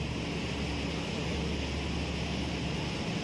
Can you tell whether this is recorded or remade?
recorded